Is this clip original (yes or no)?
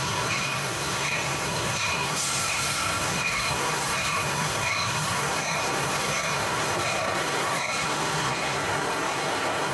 no